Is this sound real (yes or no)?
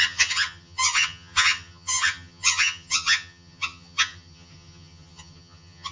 no